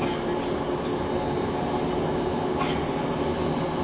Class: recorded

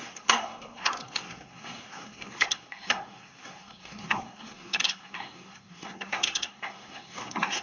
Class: remade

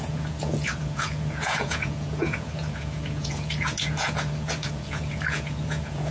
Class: remade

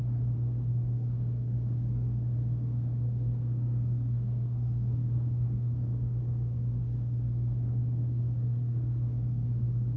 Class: remade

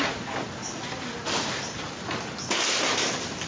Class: recorded